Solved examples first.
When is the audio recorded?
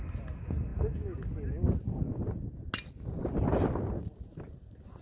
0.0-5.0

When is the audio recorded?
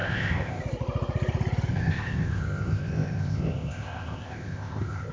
0.6-1.7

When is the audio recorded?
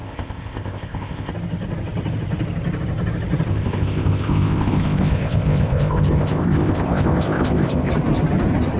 1.3-3.5; 7.9-8.8